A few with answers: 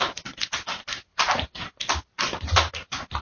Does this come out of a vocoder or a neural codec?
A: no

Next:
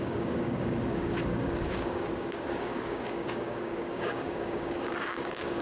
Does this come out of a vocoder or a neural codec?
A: yes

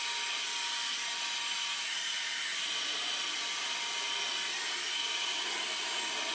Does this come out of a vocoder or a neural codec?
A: no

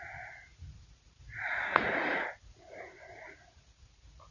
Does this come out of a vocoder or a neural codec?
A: yes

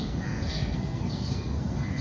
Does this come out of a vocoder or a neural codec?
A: yes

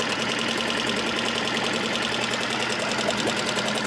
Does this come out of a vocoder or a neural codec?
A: no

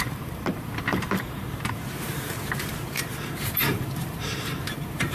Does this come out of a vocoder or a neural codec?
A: yes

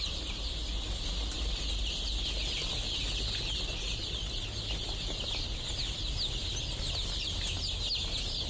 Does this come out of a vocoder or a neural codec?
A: no